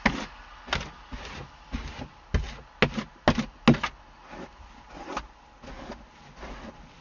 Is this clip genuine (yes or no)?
yes